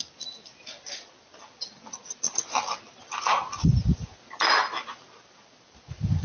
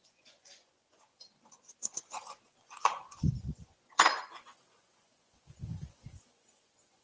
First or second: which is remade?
second